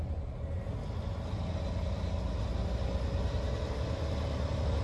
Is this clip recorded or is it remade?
recorded